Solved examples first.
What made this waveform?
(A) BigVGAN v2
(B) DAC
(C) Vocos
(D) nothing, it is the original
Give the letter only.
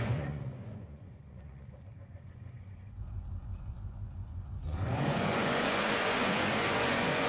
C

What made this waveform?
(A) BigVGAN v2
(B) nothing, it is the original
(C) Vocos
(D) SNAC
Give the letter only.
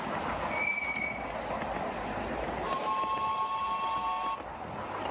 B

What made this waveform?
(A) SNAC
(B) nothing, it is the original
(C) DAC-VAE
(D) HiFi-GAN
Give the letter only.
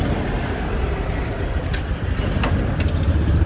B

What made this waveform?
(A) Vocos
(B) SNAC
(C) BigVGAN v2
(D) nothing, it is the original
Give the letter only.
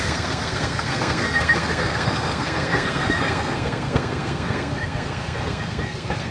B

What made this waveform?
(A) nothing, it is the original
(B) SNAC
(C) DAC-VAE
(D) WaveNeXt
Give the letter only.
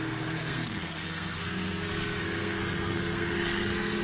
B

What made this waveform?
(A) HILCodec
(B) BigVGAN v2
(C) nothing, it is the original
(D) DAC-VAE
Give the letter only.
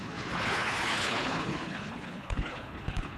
A